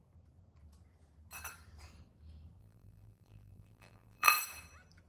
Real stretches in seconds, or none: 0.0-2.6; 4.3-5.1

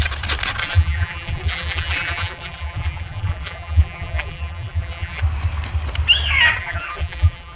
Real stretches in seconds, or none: 0.0-0.6; 5.2-6.6

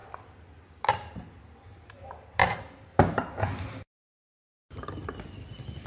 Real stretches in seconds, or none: 0.0-2.4; 4.5-5.9

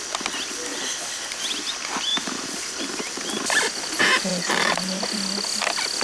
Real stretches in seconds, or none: 0.0-2.1; 3.5-4.3; 5.0-6.0

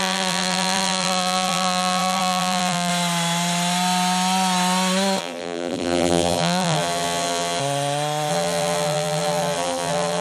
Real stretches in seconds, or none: 2.9-5.2; 7.6-8.3

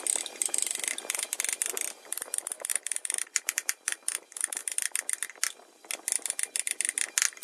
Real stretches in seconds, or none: 0.0-2.7; 4.6-7.4

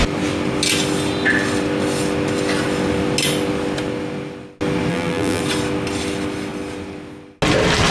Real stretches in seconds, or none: 0.0-4.9; 5.4-7.9

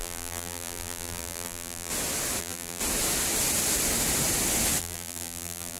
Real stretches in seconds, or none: 1.9-2.4; 2.8-4.8